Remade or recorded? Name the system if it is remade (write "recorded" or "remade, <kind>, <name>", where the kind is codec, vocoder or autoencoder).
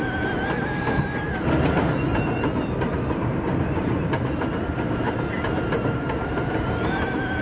recorded